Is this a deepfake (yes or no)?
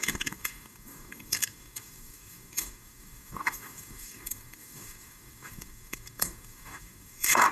yes